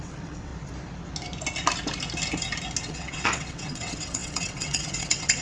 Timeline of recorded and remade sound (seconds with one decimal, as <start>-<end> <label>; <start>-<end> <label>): 0.0-0.5 remade; 0.5-2.8 recorded; 2.8-5.4 remade